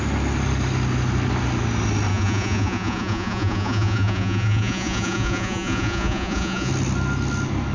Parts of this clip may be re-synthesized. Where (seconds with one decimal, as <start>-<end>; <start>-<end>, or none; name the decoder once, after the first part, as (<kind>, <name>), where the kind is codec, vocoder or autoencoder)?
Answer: 2.1-6.7 (vocoder, Vocos)